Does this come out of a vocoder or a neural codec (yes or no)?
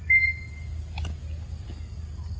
no